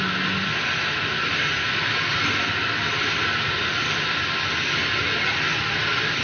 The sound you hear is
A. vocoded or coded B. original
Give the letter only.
B